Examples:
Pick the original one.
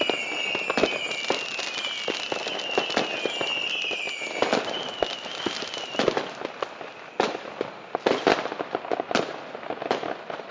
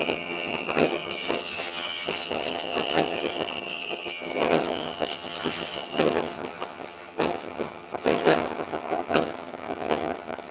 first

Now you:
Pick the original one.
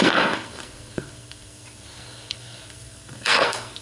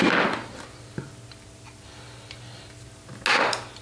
second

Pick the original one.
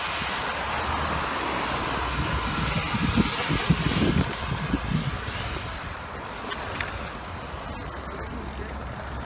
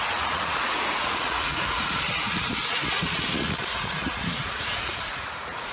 first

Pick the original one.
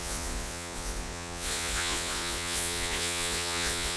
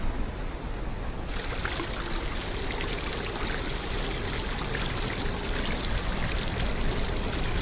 second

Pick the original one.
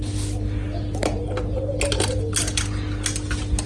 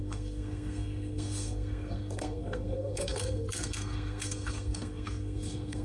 first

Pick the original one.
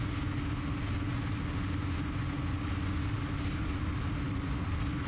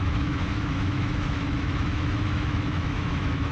first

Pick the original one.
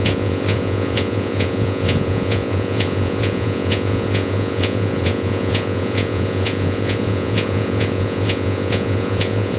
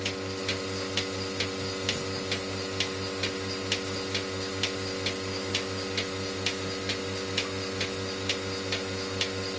second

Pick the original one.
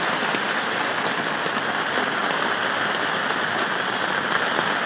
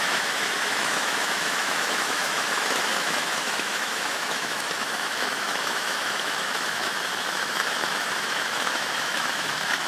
first